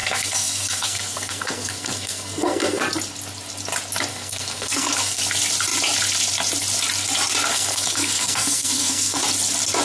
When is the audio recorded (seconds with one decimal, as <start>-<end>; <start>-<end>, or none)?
2.8-4.1; 5.2-7.5; 9.2-9.8

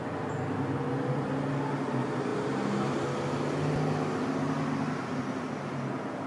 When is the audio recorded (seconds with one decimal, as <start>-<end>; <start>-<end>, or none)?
0.0-6.3

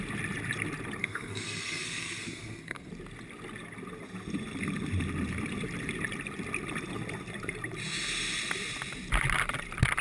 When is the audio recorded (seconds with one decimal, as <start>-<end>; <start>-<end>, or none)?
0.0-1.0; 2.9-10.0